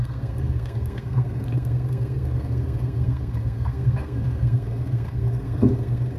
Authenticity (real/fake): fake